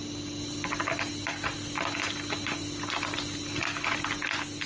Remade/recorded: recorded